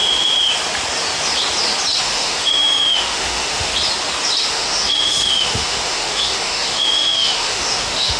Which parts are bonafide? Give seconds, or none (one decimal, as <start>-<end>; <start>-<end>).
0.0-2.0; 3.7-4.5